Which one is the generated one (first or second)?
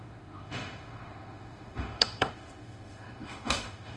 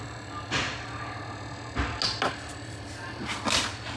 first